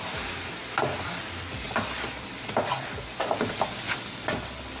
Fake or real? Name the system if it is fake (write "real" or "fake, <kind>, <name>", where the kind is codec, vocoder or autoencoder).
real